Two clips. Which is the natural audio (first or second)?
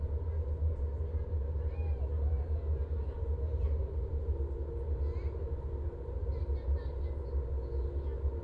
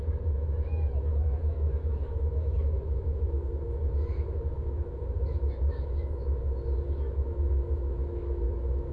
first